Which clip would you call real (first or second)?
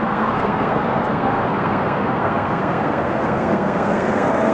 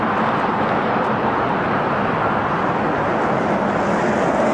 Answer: second